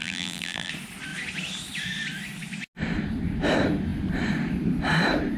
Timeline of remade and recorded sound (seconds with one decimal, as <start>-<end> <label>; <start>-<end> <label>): 0.0-0.7 remade; 0.7-5.4 recorded